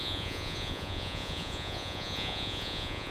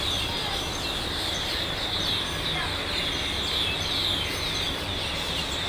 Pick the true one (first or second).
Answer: second